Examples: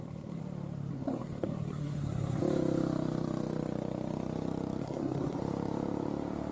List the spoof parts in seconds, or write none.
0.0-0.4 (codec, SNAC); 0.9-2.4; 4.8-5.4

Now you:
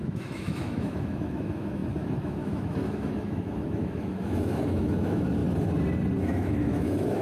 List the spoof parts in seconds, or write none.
0.0-5.4 (autoencoder, DAC-VAE); 6.2-7.2

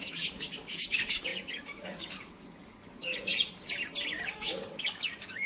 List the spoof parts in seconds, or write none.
0.0-3.3 (codec, DAC); 4.3-5.5

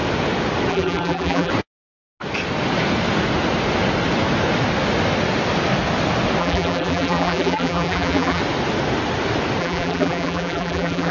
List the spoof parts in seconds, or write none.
0.7-1.5 (vocoder, BigVGAN v2); 6.4-8.4; 9.6-11.1

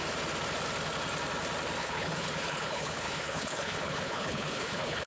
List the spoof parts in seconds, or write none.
1.8-5.1 (codec, HILCodec)

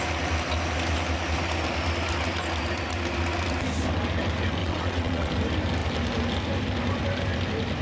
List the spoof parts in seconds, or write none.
4.6-5.3 (vocoder, WaveNeXt)

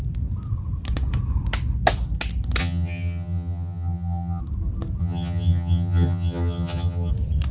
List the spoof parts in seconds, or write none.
2.6-4.4 (vocoder, HiFi-GAN); 5.0-7.1

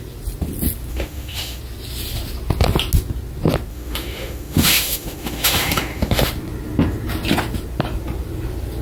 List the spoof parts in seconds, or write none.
0.9-1.6 (autoencoder, DAC-VAE); 3.7-6.3